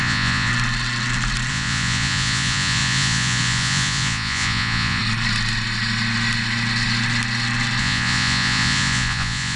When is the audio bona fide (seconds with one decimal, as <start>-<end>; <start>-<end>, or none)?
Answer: 0.5-1.5; 5.0-7.8